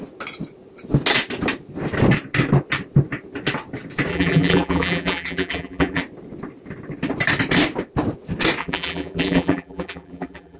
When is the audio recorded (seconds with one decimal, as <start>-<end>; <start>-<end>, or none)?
0.0-4.1; 6.0-8.6